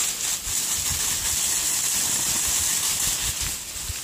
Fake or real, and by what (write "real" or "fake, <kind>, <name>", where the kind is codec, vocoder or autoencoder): real